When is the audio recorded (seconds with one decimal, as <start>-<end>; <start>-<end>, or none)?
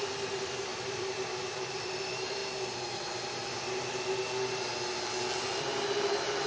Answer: 2.4-5.4